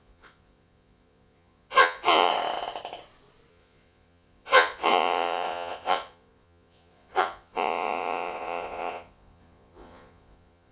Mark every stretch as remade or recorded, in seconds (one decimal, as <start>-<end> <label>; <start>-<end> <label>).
0.0-2.3 remade; 2.3-3.5 recorded; 3.5-10.7 remade